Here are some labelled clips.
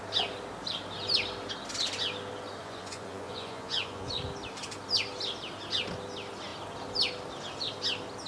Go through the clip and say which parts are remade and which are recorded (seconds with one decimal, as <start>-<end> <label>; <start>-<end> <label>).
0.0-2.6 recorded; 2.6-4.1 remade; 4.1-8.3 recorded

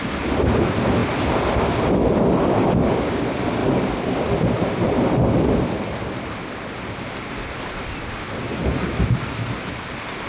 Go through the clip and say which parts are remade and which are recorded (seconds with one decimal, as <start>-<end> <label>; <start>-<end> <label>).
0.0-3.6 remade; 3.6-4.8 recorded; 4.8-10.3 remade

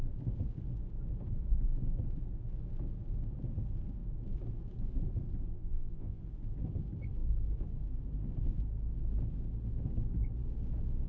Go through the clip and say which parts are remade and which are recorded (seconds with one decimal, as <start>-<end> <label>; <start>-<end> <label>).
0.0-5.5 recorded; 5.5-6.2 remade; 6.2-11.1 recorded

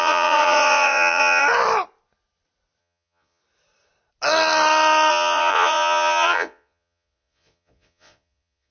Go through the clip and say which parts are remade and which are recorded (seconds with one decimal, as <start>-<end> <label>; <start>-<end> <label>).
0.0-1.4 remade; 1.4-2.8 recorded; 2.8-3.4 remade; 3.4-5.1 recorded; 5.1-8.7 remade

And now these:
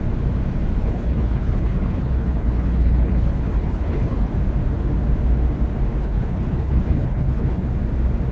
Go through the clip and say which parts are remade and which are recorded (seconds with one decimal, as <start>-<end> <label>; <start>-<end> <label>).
0.0-0.8 recorded; 0.8-4.3 remade; 4.3-6.0 recorded; 6.0-7.7 remade; 7.7-8.3 recorded

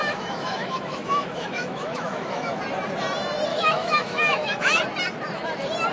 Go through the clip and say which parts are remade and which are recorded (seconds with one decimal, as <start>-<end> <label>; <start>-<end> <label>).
0.0-2.6 remade; 2.6-3.5 recorded; 3.5-4.8 remade; 4.8-5.9 recorded

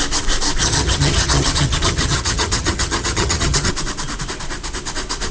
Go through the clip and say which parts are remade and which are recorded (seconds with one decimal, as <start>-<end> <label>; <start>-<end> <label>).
0.0-0.6 recorded; 0.6-3.7 remade; 3.7-5.3 recorded